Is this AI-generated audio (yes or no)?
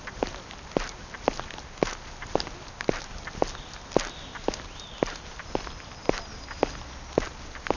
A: no